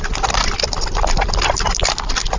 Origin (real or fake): real